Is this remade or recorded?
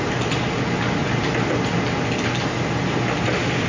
recorded